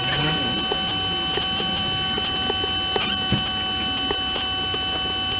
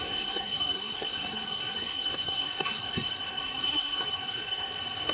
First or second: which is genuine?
first